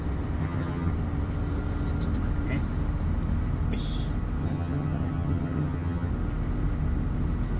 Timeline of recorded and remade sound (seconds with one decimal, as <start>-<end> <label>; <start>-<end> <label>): 0.0-0.4 recorded; 0.4-0.9 remade; 0.9-4.4 recorded; 4.4-6.1 remade; 6.1-7.6 recorded